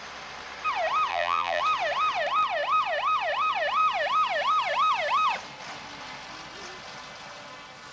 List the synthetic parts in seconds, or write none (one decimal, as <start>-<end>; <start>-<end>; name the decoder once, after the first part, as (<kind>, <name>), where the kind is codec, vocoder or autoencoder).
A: 1.1-1.6 (vocoder, BigVGAN v2)